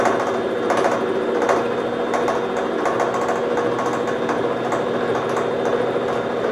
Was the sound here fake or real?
real